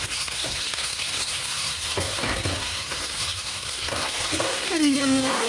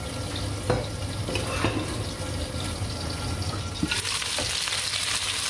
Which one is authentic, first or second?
second